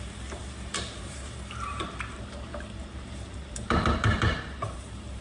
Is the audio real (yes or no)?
no